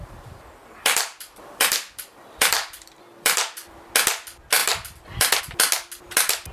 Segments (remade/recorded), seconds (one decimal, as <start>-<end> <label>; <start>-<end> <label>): 0.0-0.6 recorded; 0.6-3.9 remade; 3.9-4.6 recorded; 4.6-5.4 remade; 5.4-6.5 recorded